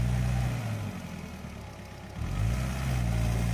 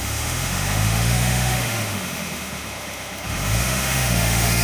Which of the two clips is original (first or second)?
first